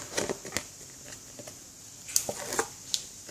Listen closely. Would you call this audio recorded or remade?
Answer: remade